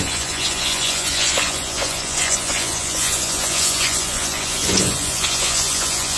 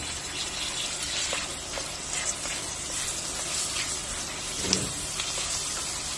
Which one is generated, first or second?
first